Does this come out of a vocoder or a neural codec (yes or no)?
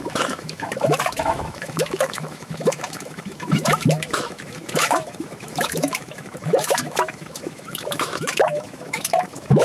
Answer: yes